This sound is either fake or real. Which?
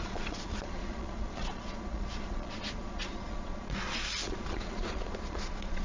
fake